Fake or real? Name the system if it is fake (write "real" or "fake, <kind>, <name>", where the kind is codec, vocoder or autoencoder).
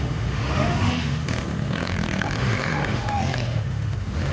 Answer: fake, autoencoder, DAC-VAE